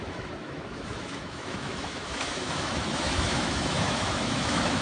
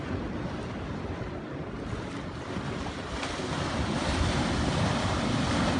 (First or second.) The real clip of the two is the second